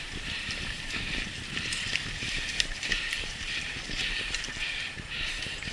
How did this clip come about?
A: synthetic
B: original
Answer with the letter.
A